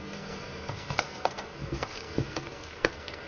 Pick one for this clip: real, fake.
fake